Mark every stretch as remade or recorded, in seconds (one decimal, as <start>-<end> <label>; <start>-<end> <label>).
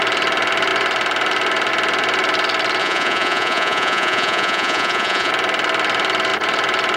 0.0-2.8 recorded; 2.8-5.3 remade; 5.3-7.0 recorded